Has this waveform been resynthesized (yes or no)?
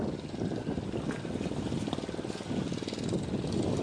no